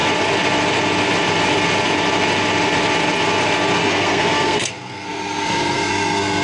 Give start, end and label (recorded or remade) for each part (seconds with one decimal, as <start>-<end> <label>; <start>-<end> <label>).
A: 0.0-3.8 recorded; 3.8-6.4 remade

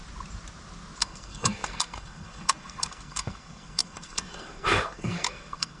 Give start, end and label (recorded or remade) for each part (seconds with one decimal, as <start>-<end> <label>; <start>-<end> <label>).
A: 0.0-1.0 recorded; 1.0-5.8 remade